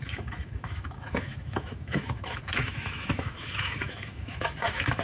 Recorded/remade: remade